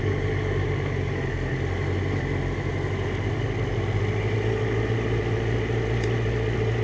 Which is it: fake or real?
real